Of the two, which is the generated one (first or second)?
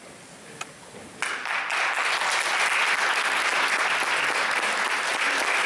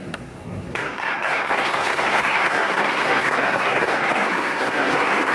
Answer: second